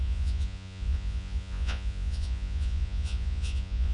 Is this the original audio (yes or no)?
no